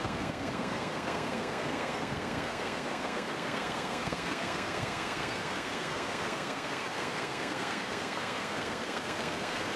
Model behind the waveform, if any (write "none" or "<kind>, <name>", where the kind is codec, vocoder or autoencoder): codec, SNAC